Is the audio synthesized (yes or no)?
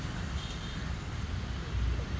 no